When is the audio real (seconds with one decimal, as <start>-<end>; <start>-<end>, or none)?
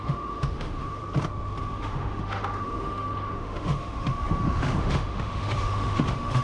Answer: 1.0-1.6